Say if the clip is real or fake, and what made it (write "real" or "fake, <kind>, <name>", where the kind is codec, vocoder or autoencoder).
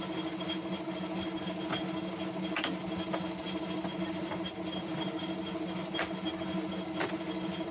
real